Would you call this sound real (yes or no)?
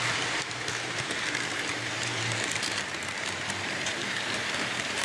no